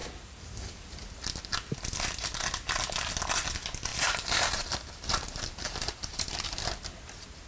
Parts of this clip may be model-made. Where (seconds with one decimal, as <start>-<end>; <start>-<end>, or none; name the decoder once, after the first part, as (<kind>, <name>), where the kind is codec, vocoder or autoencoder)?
0.0-0.6 (vocoder, BigVGAN v2); 3.9-6.6